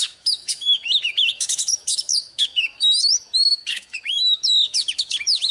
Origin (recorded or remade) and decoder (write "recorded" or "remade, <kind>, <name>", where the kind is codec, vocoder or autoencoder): remade, autoencoder, DAC-VAE